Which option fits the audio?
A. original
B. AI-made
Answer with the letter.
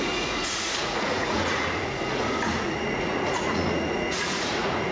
B